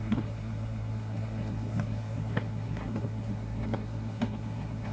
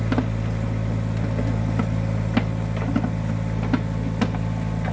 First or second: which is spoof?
first